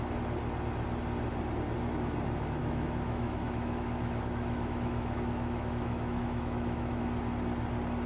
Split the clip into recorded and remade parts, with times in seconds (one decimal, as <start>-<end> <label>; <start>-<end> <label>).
0.0-2.6 recorded; 2.6-7.0 remade; 7.0-8.1 recorded